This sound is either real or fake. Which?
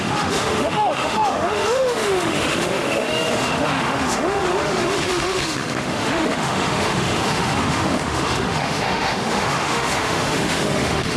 fake